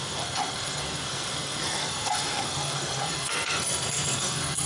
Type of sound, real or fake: fake